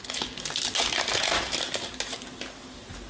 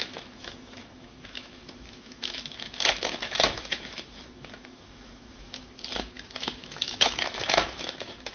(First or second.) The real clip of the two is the first